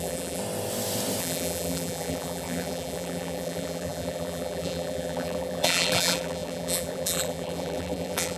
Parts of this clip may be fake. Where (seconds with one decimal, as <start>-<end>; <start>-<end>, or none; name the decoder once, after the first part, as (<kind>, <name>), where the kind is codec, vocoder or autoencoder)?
0.0-0.4 (vocoder, BigVGAN v2); 1.2-8.4